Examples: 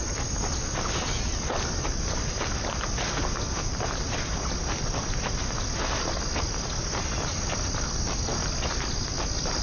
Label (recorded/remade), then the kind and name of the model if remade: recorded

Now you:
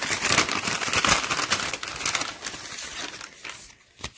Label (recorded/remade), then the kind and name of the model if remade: recorded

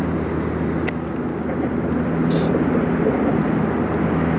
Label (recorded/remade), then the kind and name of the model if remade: recorded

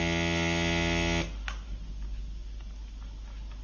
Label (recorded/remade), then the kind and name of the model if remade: recorded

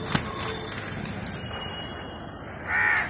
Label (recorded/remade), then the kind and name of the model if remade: recorded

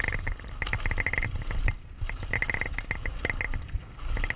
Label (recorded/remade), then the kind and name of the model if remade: recorded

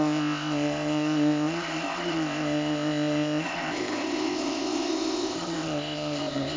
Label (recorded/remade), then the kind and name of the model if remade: remade, codec, ZipCodec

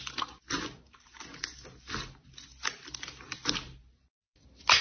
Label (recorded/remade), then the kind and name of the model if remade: recorded